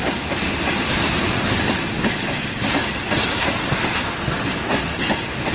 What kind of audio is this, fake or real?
real